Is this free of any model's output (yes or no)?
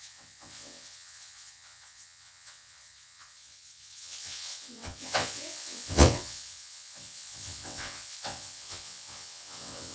no